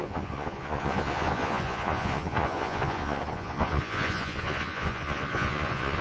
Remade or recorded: remade